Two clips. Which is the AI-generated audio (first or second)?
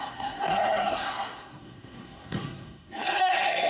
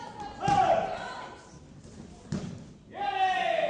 first